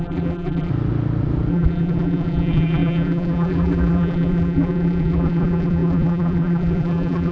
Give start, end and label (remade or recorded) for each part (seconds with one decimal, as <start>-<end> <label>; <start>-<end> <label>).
0.0-0.7 remade; 0.7-1.5 recorded; 1.5-7.3 remade